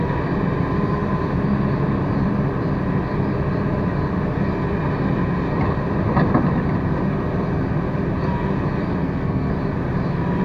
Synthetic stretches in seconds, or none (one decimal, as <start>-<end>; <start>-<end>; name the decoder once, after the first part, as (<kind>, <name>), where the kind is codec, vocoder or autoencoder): 9.0-9.5 (codec, SNAC)